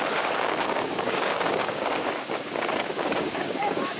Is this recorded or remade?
remade